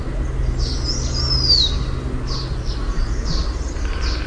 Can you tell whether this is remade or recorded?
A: recorded